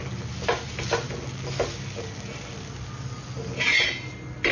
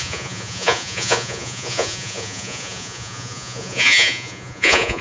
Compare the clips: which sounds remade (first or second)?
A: second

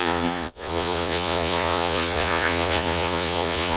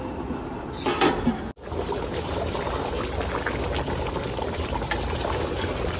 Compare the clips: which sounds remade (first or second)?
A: first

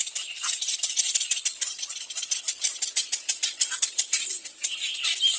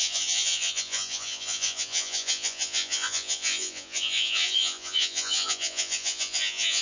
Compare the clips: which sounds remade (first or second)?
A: second